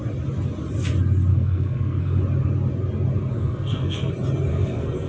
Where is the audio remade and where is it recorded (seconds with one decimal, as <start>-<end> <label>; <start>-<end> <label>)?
0.0-1.3 recorded; 1.3-2.2 remade; 2.2-3.4 recorded; 3.4-4.1 remade; 4.1-4.5 recorded; 4.5-5.1 remade